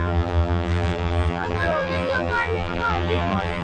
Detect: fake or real fake